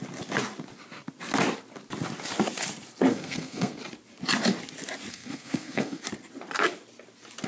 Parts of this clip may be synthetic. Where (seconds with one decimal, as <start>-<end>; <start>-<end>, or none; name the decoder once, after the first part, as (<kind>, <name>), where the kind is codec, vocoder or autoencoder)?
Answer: 3.1-3.8 (codec, SNAC); 5.1-6.0